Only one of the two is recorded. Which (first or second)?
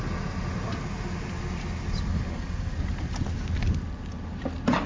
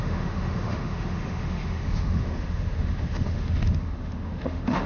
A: first